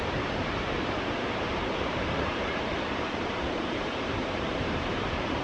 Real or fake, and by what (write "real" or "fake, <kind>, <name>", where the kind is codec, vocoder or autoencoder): fake, vocoder, BigVGAN v2